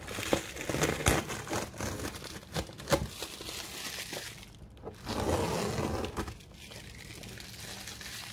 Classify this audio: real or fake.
real